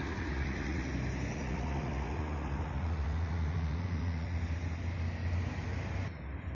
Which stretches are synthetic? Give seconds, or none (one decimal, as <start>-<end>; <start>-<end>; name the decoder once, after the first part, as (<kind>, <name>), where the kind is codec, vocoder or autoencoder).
0.0-0.9 (vocoder, Vocos); 1.3-4.4